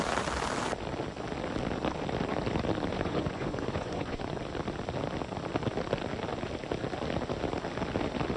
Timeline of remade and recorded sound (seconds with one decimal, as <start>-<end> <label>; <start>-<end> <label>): 0.0-2.9 recorded; 2.9-4.4 remade; 4.4-8.4 recorded